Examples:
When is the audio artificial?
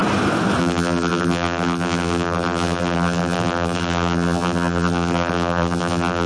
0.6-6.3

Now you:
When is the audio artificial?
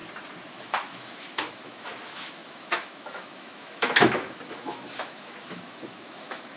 0.5-6.6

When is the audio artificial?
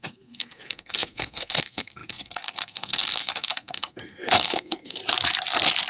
0.0-5.0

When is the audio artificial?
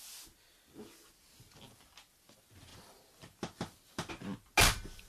none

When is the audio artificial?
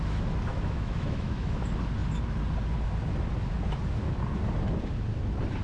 0.5-1.6